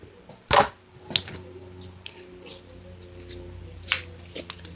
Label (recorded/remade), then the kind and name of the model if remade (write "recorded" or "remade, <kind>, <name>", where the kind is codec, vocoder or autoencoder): recorded